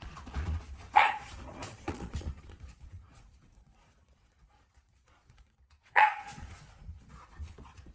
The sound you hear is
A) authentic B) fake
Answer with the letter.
B